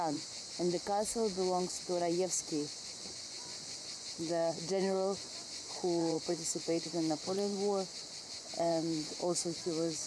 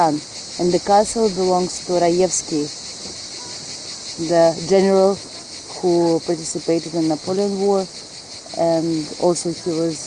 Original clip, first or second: second